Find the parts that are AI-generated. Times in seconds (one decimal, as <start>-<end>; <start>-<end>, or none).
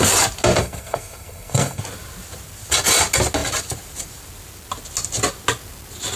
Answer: 0.6-1.8